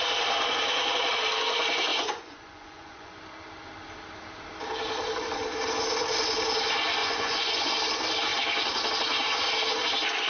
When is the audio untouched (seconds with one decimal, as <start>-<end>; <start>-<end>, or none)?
0.0-1.9; 3.2-7.0; 7.7-10.3

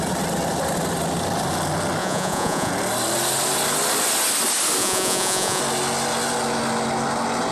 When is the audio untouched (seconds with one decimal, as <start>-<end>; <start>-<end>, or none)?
0.0-2.0; 2.7-4.8; 5.6-7.5

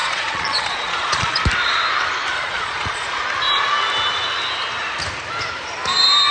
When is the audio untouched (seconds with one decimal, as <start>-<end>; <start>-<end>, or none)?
1.4-2.3; 3.2-6.3

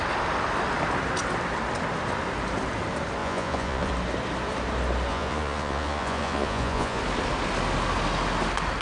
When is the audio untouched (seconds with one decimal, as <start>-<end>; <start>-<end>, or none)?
0.0-3.2; 3.9-5.1; 7.0-8.8

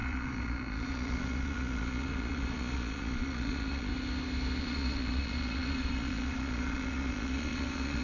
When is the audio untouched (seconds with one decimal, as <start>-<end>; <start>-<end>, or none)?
3.9-4.6

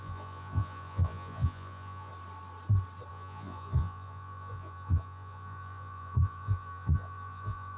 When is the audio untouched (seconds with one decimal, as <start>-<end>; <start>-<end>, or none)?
2.1-3.1

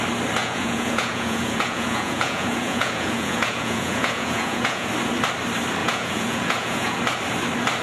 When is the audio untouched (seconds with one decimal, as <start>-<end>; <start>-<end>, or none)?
0.0-0.4; 4.9-5.8; 7.0-7.8

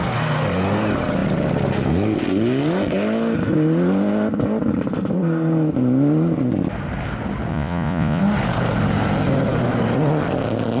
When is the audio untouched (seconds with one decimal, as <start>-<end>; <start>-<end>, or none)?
0.0-7.5; 8.2-10.8